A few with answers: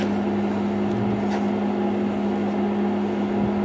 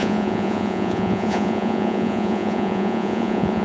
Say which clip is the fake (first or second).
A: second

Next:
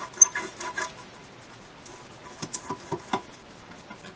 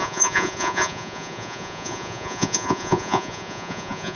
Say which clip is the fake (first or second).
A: second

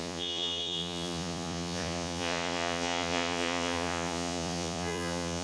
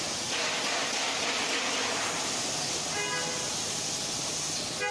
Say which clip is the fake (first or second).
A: first